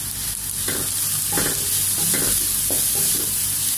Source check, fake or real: real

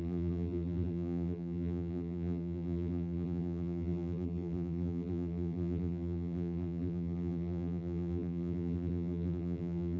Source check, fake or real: fake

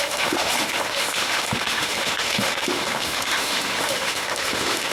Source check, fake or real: fake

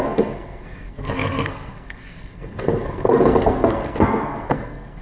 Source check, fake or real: fake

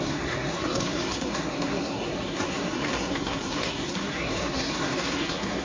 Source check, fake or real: fake